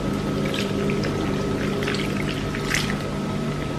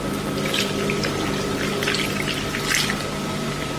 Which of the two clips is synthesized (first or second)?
second